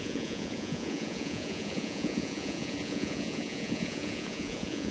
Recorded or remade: remade